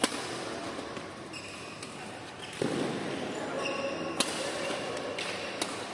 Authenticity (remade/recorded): recorded